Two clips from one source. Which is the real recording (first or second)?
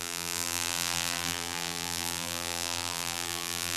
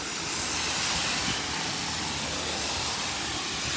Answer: second